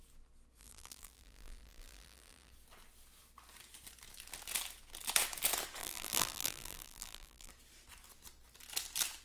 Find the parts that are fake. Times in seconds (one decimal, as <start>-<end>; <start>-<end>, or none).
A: 0.6-2.5; 5.8-7.5